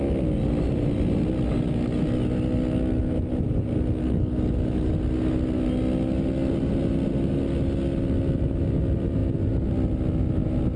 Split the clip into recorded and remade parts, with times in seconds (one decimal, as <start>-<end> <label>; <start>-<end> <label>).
0.0-4.0 recorded; 4.0-4.9 remade; 4.9-10.8 recorded